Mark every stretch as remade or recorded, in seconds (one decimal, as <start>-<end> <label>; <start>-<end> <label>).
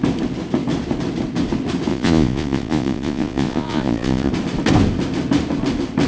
0.0-1.9 recorded; 1.9-4.3 remade; 4.3-6.1 recorded